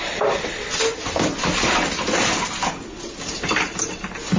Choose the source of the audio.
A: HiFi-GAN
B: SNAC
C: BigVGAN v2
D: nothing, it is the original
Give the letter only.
D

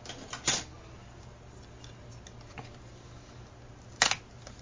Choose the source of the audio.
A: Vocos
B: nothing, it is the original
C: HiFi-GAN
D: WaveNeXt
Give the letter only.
B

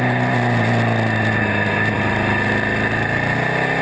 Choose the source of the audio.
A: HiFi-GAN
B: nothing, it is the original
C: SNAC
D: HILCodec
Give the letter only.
B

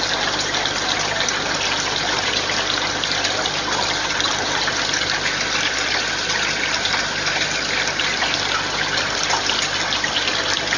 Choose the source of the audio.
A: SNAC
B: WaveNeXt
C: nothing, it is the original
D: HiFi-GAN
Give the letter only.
C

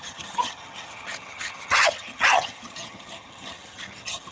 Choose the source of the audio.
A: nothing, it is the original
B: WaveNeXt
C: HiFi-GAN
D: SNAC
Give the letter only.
C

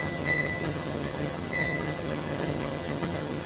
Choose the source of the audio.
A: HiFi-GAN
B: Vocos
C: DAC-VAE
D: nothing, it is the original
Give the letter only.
A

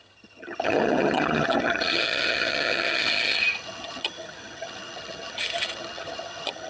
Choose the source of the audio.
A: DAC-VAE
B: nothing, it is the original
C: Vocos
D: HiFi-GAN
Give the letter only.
D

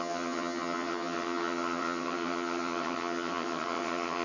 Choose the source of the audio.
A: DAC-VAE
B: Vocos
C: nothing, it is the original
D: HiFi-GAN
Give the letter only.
D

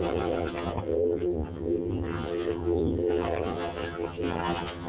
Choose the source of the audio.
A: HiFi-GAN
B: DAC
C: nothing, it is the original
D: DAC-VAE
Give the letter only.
A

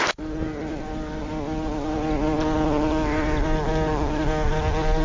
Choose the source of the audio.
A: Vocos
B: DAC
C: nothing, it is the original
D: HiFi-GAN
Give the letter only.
C